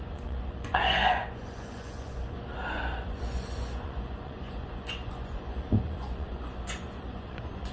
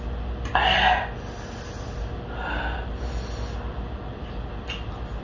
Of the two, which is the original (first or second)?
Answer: second